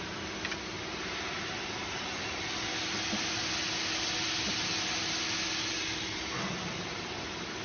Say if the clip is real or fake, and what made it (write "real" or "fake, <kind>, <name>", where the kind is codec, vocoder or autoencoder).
real